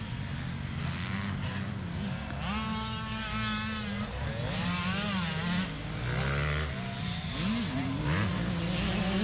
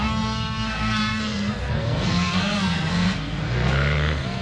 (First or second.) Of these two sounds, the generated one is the second